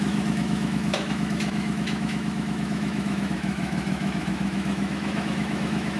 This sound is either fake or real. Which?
fake